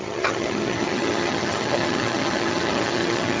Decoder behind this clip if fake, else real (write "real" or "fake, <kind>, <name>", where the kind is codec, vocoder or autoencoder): fake, vocoder, HiFi-GAN